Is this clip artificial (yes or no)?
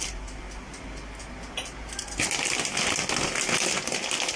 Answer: no